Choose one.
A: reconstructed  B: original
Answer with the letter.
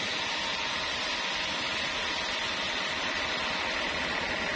B